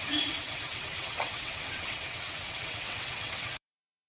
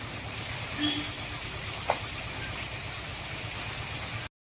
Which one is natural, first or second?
second